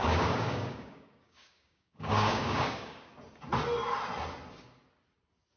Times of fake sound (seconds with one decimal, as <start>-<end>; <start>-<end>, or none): 0.0-3.1